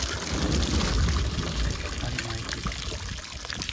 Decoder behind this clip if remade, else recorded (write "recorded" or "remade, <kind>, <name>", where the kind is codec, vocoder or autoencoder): recorded